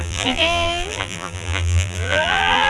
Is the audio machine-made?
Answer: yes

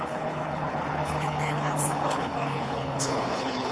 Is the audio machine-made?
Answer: yes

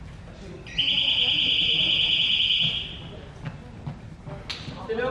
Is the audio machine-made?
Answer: no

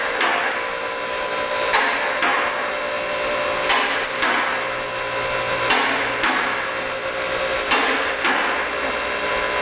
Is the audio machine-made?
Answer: no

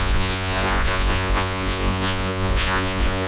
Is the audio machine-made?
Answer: yes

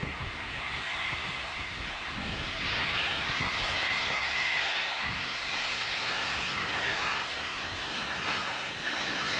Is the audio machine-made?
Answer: yes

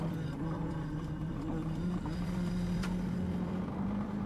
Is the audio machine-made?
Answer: yes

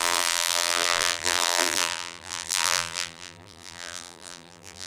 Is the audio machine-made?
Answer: yes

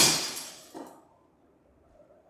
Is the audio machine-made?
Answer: yes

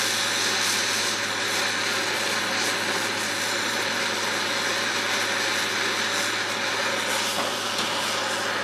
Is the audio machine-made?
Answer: no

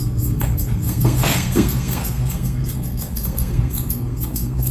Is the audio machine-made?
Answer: yes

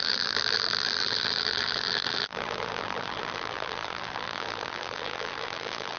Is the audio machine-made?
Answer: yes